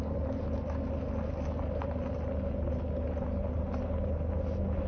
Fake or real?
real